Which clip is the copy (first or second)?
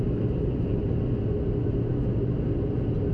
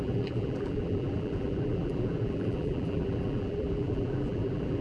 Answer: second